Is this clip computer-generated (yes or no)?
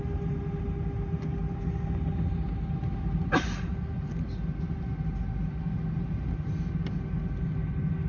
no